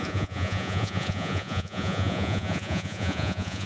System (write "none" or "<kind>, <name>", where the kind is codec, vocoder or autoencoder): vocoder, Vocos